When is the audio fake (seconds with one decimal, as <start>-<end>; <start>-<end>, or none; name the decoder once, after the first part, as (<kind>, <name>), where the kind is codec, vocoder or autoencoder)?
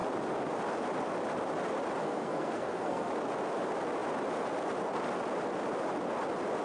2.0-3.1 (codec, SNAC)